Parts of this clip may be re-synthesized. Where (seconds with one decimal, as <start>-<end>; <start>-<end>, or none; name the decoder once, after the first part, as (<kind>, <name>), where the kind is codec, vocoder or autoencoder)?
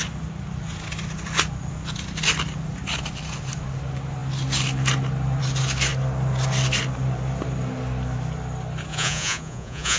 8.9-10.0 (vocoder, Vocos)